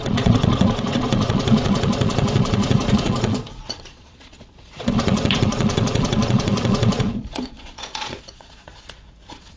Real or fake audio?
fake